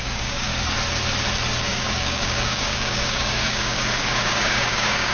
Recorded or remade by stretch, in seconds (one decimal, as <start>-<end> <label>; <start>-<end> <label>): 0.0-0.5 remade; 0.5-1.6 recorded; 1.6-5.1 remade